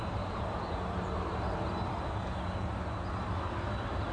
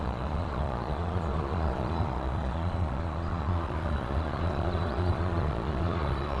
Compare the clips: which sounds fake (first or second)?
second